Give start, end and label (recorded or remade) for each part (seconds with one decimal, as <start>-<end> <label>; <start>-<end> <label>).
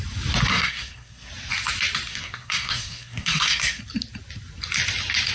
0.0-0.5 recorded; 0.5-1.3 remade; 1.3-2.1 recorded; 2.1-3.8 remade; 3.8-5.3 recorded